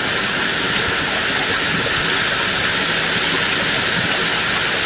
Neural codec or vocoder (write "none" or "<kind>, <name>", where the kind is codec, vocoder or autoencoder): none